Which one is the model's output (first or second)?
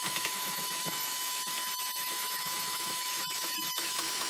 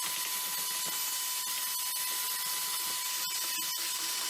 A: first